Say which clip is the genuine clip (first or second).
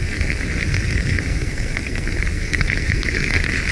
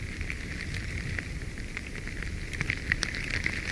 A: second